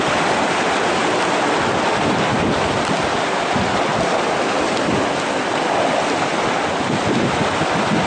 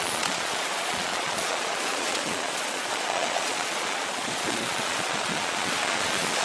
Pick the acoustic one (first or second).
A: first